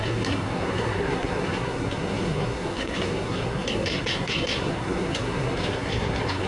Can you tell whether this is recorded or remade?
remade